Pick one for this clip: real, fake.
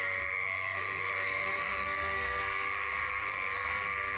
fake